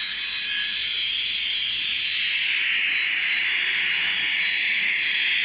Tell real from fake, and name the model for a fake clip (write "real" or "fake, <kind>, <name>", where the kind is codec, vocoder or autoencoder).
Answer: real